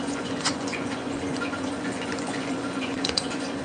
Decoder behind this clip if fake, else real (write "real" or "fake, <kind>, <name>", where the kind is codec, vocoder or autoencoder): fake, vocoder, Vocos